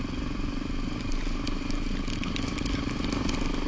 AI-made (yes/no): no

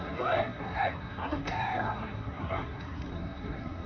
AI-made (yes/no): yes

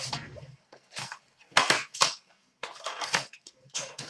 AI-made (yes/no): yes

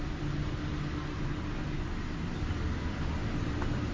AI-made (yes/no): no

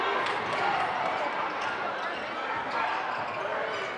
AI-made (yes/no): no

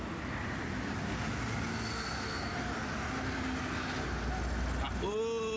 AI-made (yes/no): no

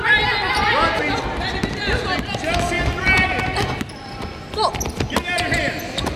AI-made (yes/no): no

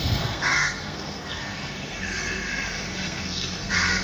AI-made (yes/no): yes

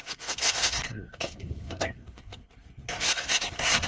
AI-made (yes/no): yes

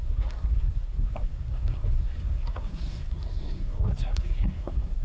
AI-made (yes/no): yes